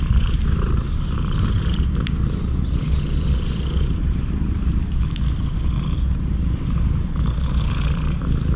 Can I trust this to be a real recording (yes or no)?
no